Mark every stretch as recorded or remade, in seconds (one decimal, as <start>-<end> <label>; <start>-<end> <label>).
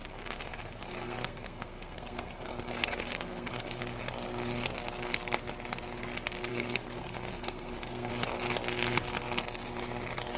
0.0-3.8 remade; 3.8-6.5 recorded; 6.5-8.1 remade; 8.1-10.4 recorded